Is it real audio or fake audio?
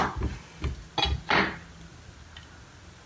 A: real